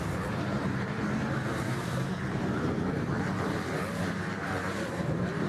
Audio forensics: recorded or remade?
remade